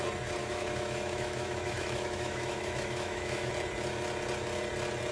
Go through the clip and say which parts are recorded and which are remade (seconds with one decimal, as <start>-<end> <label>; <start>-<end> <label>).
0.0-0.4 recorded; 0.4-3.5 remade; 3.5-5.1 recorded